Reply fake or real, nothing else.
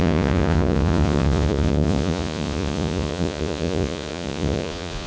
fake